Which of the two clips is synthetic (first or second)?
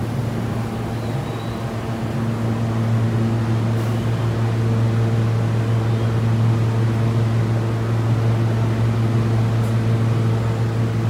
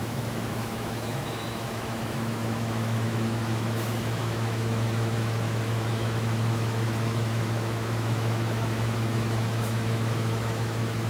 second